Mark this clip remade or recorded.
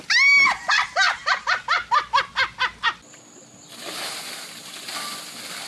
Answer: recorded